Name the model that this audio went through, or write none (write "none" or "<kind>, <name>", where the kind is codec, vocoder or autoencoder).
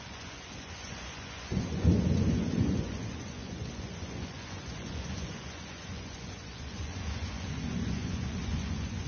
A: vocoder, Vocos